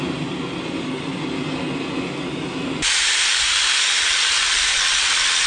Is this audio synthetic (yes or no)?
no